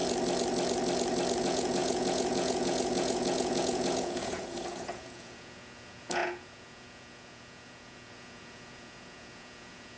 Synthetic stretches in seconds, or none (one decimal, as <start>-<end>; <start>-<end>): 1.4-10.0